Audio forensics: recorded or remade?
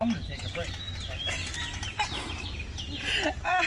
recorded